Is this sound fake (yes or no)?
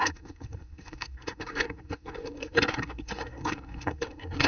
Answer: yes